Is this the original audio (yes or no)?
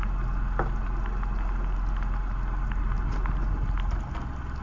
yes